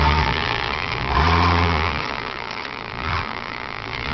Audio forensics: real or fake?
fake